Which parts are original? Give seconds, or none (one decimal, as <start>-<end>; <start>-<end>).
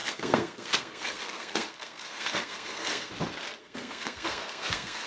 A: 3.1-3.6